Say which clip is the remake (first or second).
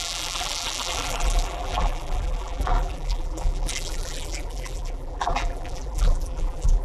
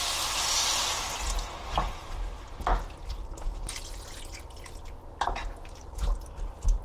first